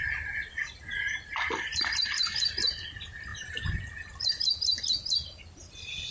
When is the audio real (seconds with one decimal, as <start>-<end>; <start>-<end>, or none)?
0.0-1.7; 2.5-3.3; 3.8-6.1